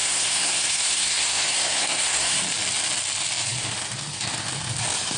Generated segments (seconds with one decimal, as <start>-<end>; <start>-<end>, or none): 0.0-2.4

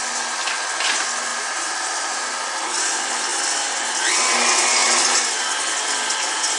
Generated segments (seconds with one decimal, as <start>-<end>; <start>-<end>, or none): 1.3-2.3